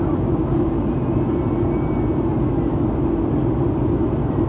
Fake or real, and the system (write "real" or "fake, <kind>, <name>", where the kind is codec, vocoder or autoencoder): real